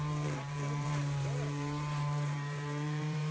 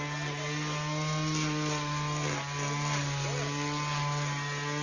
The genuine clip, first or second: second